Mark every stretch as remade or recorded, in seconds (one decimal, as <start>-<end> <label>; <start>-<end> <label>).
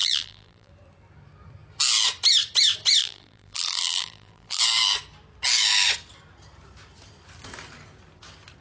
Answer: 0.0-0.7 remade; 0.7-3.0 recorded; 3.0-4.6 remade; 4.6-8.6 recorded